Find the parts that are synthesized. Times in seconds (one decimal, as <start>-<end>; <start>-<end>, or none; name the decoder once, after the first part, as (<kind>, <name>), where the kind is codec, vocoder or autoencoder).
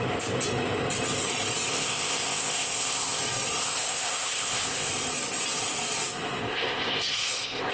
1.7-3.2 (codec, ZipCodec); 3.6-4.9; 6.4-7.7